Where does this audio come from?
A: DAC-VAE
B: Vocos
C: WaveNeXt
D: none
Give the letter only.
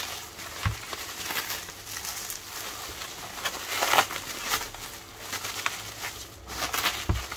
D